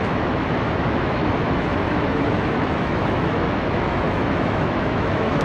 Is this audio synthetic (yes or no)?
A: yes